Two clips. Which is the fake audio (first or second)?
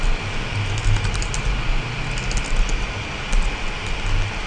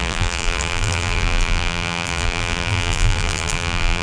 second